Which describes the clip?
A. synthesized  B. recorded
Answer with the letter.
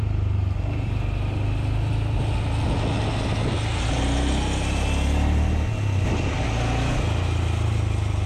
B